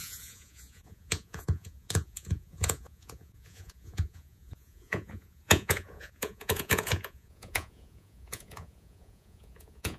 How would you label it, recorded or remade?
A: remade